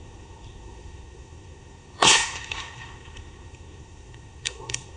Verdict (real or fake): fake